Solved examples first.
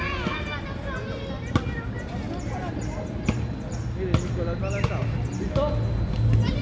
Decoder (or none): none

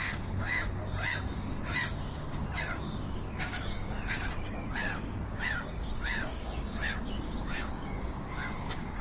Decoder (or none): codec, DAC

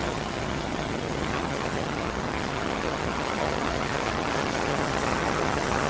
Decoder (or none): vocoder, HiFi-GAN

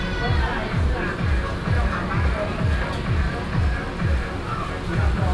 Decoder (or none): none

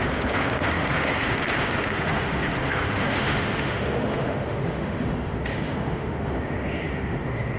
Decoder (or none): autoencoder, DAC-VAE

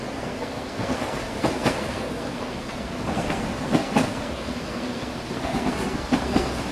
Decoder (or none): codec, SNAC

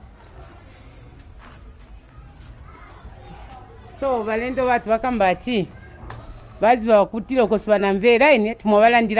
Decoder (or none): none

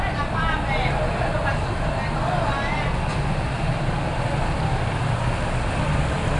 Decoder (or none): none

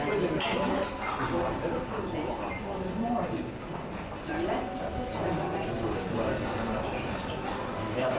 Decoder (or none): none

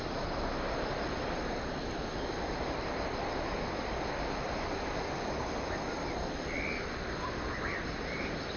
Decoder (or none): none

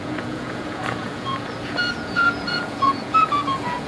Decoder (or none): vocoder, Vocos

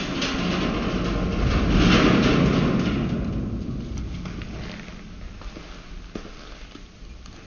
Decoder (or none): none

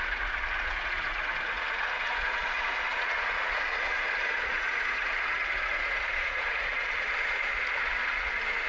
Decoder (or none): vocoder, Vocos